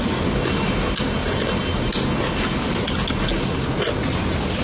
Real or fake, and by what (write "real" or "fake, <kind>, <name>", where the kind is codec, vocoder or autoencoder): real